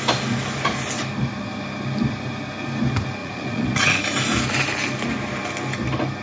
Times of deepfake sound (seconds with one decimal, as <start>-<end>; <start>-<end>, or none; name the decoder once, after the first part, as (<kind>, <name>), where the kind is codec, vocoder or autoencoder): 3.2-4.0 (vocoder, Vocos)